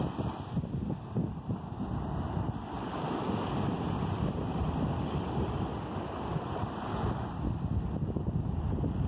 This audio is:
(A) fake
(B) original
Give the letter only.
A